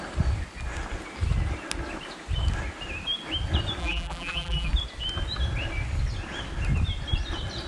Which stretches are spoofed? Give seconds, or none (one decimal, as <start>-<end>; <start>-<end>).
3.8-4.7

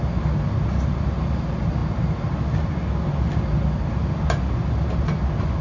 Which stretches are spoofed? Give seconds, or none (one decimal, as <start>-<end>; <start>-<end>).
none

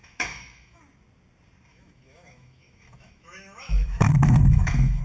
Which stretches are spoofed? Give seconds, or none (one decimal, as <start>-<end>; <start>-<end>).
0.0-0.8; 1.7-5.0